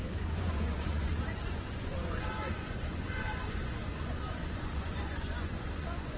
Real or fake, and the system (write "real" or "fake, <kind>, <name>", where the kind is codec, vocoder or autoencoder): fake, vocoder, Vocos